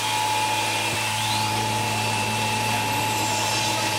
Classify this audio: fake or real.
fake